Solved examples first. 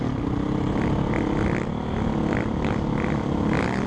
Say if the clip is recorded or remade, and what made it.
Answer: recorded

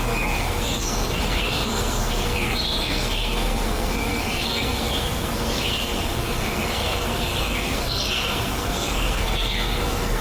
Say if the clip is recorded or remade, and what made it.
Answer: remade, codec, SNAC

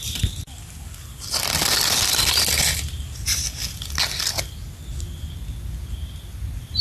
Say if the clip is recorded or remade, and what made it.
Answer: recorded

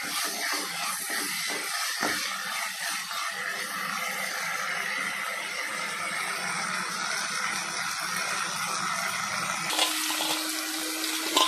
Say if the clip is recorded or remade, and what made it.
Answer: recorded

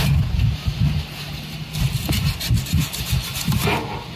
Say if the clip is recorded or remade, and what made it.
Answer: recorded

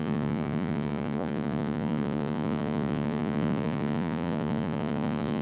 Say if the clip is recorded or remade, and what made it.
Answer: remade, vocoder, Vocos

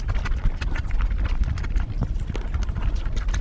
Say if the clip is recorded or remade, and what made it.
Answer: recorded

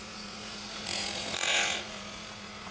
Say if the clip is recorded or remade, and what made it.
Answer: remade, vocoder, Vocos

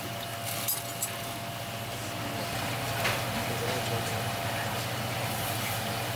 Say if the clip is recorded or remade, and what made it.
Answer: recorded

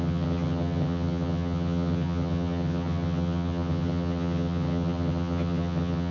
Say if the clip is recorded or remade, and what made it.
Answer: remade, vocoder, HiFi-GAN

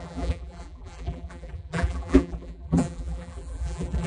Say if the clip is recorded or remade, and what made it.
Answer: remade, vocoder, BigVGAN v2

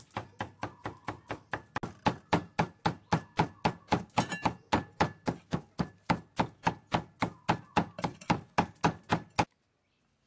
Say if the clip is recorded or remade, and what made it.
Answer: recorded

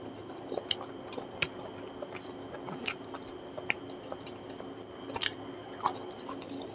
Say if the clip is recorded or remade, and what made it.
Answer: recorded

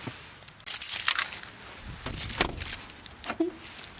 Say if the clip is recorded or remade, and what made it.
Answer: recorded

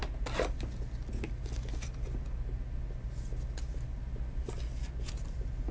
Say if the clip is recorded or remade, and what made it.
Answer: recorded